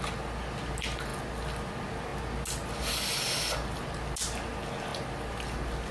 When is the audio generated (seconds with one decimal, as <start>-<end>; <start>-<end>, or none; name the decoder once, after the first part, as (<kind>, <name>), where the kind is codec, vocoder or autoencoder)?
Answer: none